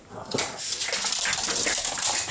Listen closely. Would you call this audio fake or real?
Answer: real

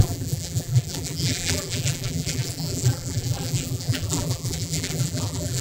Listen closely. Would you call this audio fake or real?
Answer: fake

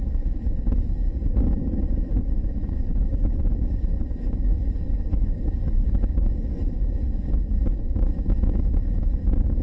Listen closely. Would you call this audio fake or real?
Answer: fake